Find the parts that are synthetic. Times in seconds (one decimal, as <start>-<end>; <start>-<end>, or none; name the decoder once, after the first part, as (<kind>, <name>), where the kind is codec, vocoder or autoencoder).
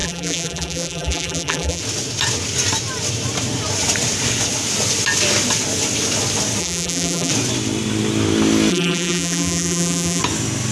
0.0-1.8 (vocoder, BigVGAN v2); 6.6-7.3; 8.7-10.2